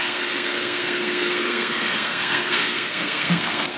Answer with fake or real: fake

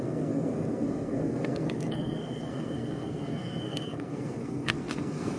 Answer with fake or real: fake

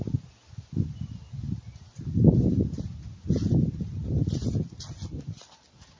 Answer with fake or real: real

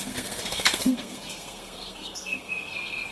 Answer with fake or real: fake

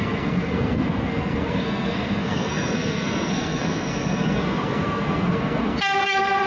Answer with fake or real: fake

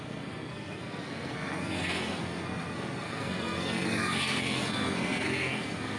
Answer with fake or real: fake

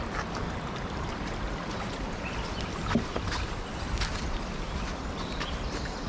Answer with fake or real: real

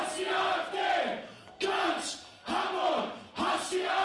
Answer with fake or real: real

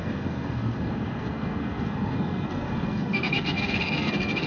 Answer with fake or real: fake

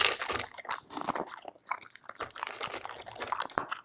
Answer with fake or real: real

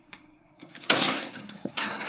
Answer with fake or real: fake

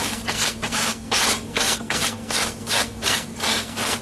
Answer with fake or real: fake